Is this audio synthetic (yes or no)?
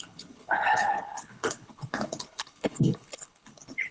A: yes